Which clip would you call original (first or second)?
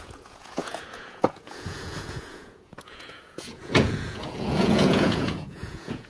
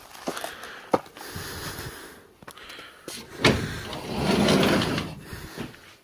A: second